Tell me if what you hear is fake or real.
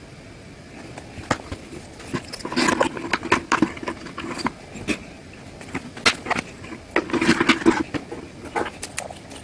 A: real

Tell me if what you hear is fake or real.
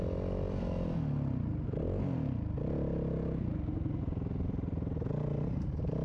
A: real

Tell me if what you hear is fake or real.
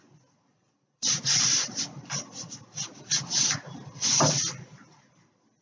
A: real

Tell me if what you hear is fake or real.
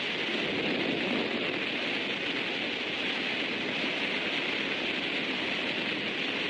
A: real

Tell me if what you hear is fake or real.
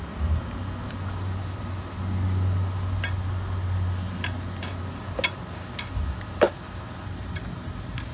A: real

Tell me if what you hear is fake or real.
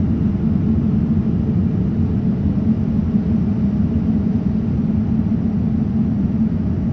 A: real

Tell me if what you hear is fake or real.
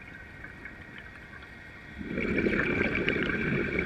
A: real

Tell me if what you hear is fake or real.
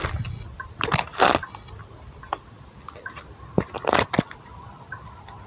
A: real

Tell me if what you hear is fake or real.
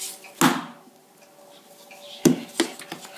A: real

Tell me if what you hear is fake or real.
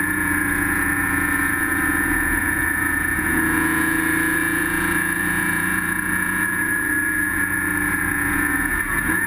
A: fake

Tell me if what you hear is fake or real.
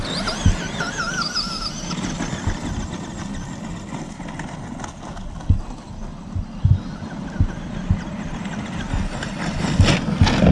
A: real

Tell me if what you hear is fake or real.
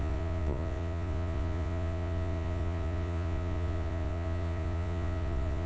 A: fake